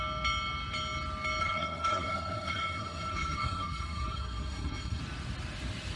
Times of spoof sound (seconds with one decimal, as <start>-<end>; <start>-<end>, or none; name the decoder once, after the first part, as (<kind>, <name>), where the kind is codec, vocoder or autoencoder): 1.4-5.0 (codec, SNAC)